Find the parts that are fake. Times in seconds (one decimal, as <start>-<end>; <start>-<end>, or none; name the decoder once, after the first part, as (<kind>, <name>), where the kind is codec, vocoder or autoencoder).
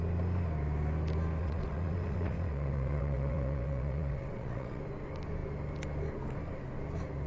1.4-4.8 (vocoder, WaveNeXt)